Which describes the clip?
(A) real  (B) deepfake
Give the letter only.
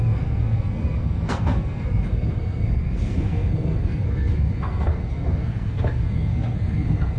B